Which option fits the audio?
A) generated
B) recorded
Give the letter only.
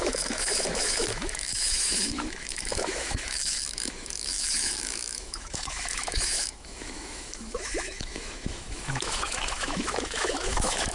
A